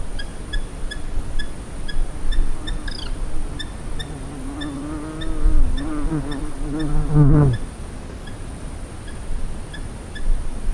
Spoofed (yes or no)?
no